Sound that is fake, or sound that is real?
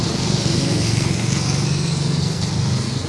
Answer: fake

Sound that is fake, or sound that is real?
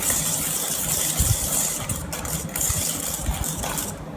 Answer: real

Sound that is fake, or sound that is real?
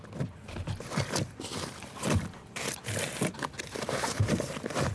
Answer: real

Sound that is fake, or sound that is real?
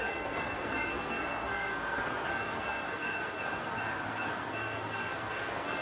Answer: fake